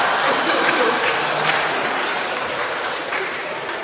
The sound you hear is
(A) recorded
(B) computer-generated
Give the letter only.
B